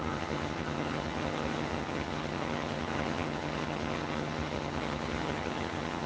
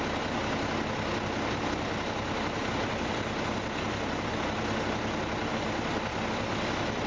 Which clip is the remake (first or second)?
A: first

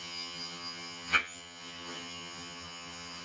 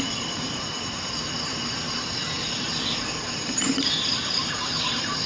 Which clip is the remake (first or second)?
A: first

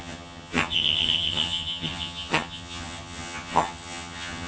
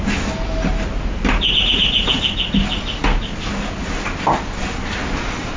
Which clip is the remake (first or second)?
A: first